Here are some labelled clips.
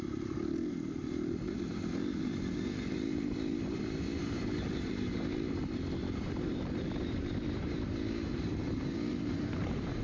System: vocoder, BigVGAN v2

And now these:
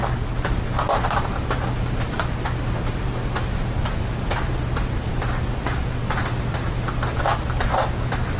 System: none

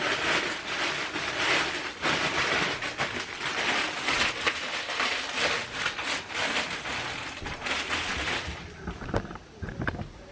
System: none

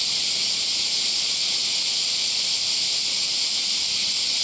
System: none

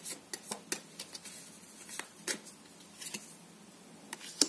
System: none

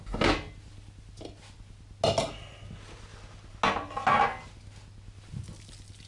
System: none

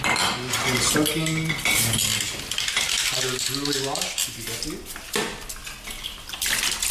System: none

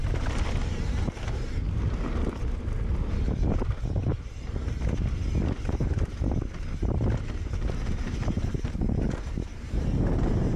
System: none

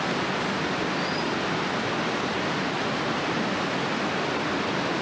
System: none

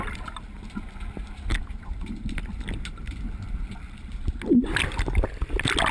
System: none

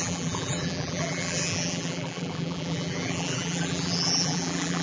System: vocoder, BigVGAN v2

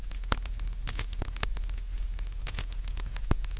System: none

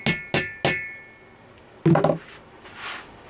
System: none